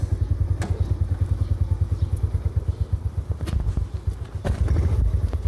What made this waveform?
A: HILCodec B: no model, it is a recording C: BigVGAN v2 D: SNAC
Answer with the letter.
B